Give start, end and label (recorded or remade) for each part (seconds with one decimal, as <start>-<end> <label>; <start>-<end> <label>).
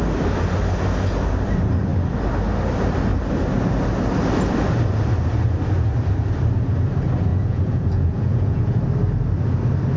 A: 0.0-7.3 recorded; 7.3-8.8 remade; 8.8-10.0 recorded